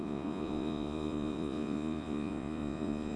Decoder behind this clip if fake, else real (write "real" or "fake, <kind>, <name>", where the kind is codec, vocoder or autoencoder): fake, vocoder, Vocos